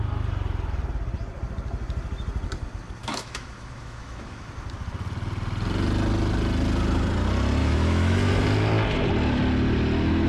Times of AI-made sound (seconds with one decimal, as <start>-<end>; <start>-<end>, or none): 3.0-4.5; 7.6-8.3